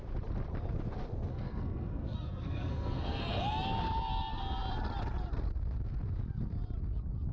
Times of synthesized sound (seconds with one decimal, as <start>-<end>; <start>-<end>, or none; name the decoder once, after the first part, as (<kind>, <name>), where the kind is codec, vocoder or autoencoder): 1.3-3.2 (codec, SNAC)